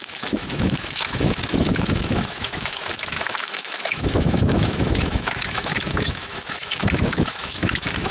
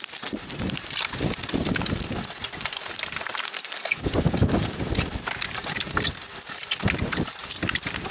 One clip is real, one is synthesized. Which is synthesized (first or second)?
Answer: first